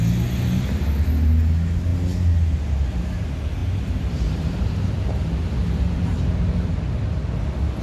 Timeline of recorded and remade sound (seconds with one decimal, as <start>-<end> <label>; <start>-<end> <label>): 0.0-3.6 recorded; 3.6-6.7 remade; 6.7-7.8 recorded